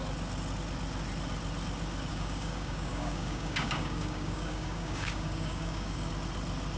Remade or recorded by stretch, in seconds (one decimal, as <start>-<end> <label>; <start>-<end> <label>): 0.0-2.1 recorded; 2.1-6.1 remade; 6.1-6.8 recorded